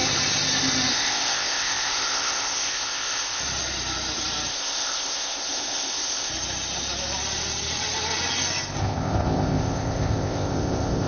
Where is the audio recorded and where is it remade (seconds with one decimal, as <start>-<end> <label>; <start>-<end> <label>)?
0.0-0.9 recorded; 0.9-3.4 remade; 3.4-4.5 recorded; 4.5-6.3 remade; 6.3-8.8 recorded; 8.8-11.1 remade

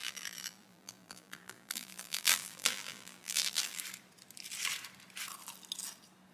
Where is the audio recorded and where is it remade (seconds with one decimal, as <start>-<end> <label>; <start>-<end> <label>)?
0.0-3.8 remade; 3.8-6.3 recorded

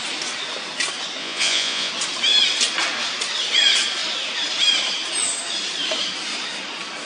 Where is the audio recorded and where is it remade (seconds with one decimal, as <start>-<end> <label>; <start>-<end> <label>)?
0.0-1.2 recorded; 1.2-1.9 remade; 1.9-7.1 recorded

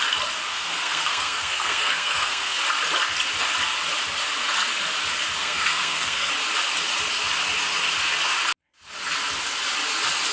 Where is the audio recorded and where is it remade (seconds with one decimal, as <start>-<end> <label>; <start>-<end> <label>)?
0.0-0.5 recorded; 0.5-2.6 remade; 2.6-5.4 recorded; 5.4-6.3 remade; 6.3-10.3 recorded